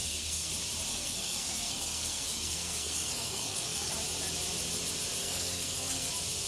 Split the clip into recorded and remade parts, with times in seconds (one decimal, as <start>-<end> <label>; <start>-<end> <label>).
0.0-0.5 remade; 0.5-0.9 recorded; 0.9-3.9 remade; 3.9-5.2 recorded; 5.2-6.1 remade; 6.1-6.5 recorded